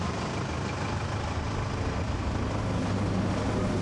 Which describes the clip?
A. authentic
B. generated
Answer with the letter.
A